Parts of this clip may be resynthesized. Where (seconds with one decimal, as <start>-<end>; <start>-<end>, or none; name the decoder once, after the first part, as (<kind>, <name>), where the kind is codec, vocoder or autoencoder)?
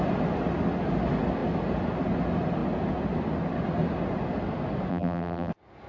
4.9-5.5 (vocoder, BigVGAN v2)